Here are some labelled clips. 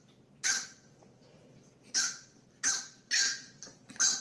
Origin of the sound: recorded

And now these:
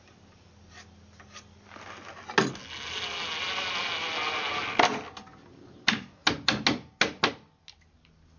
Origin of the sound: recorded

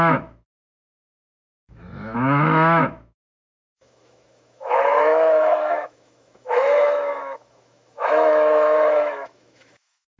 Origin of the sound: remade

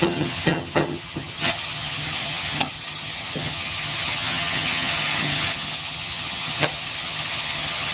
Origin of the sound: remade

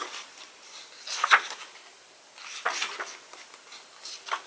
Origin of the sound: recorded